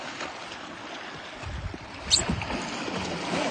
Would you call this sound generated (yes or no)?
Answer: no